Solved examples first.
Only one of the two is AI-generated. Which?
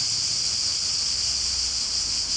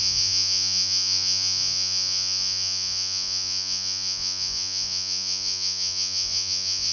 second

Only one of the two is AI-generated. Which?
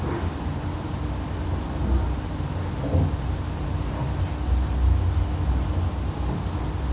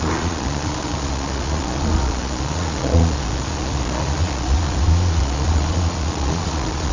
second